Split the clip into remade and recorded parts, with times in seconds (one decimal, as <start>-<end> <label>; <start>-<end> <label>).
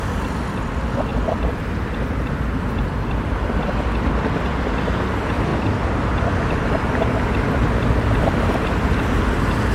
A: 0.0-1.1 recorded; 1.1-4.3 remade; 4.3-5.5 recorded; 5.5-7.7 remade; 7.7-9.7 recorded